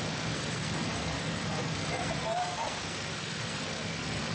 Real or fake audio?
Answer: fake